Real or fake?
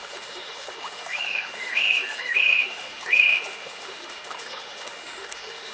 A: fake